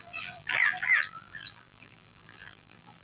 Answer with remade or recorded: remade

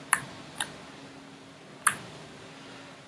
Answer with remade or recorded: recorded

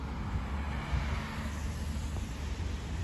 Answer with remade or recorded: recorded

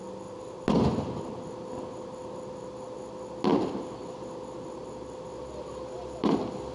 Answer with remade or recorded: recorded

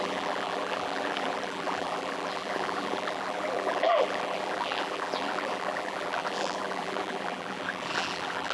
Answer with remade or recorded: remade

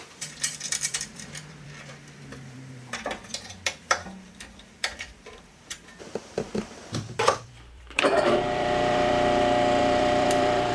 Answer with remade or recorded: remade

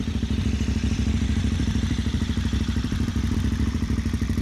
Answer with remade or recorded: remade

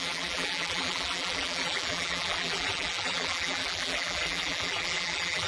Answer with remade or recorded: remade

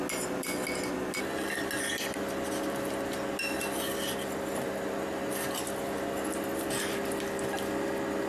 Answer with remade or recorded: recorded